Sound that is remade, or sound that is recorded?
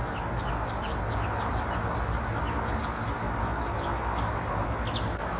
recorded